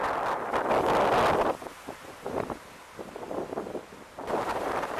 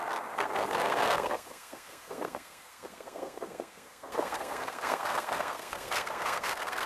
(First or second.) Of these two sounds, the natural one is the first